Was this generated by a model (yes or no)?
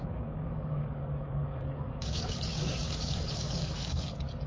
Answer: yes